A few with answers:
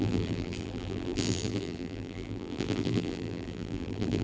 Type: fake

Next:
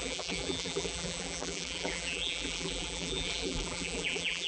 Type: fake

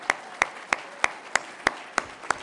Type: fake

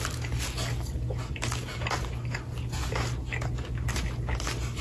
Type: real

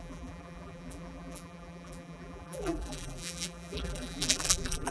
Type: fake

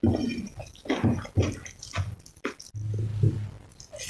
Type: real